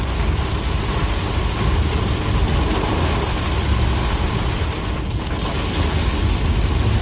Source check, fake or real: real